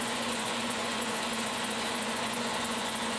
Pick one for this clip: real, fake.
fake